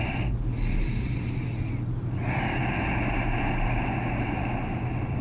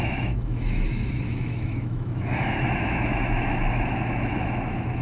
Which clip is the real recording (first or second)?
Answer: first